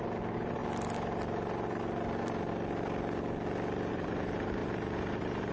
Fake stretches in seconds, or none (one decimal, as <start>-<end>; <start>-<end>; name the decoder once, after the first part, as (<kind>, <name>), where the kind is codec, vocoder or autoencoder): 0.0-0.6 (vocoder, BigVGAN v2); 3.9-5.5